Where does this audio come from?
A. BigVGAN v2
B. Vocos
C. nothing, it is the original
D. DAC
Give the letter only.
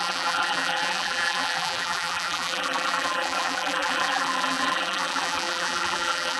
A